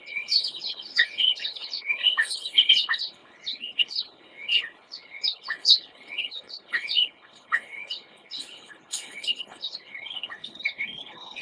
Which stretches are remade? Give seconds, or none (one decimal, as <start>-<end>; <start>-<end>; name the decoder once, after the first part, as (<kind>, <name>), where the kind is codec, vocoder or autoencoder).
0.0-11.4 (codec, HILCodec)